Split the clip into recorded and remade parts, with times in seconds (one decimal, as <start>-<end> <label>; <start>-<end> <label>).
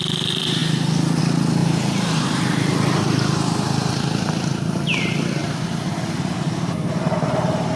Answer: 0.0-1.6 recorded; 1.6-4.7 remade; 4.7-5.4 recorded; 5.4-7.8 remade